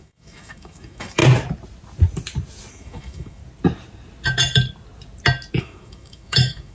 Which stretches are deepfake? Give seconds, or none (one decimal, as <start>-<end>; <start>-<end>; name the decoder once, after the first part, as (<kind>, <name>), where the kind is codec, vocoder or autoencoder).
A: 0.0-1.2 (autoencoder, DAC-VAE); 2.7-3.4; 5.6-6.7